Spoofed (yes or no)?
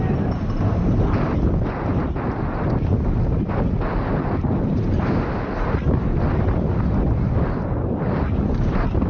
no